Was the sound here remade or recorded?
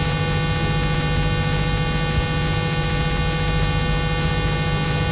recorded